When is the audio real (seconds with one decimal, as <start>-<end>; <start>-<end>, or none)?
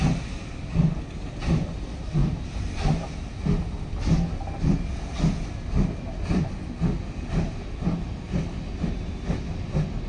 0.0-10.1